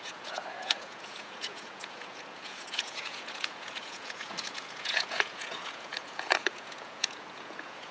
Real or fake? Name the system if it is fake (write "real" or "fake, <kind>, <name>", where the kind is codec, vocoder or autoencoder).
fake, vocoder, Vocos